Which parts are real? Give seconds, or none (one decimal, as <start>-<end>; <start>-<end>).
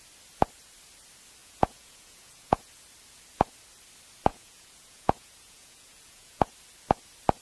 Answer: 0.0-1.4; 2.7-4.3; 6.5-7.4